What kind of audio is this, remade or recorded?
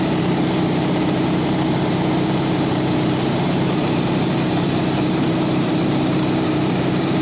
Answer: remade